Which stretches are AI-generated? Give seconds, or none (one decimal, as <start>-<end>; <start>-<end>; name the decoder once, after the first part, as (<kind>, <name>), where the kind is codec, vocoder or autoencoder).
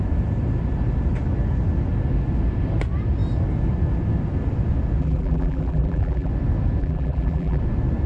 5.0-6.3 (vocoder, BigVGAN v2); 6.8-7.6